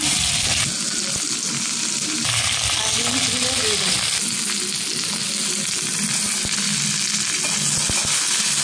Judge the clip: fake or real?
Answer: real